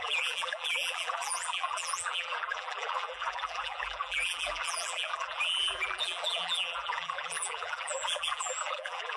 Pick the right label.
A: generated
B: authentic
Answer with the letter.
A